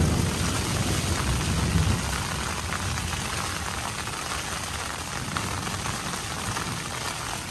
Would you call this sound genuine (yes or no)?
yes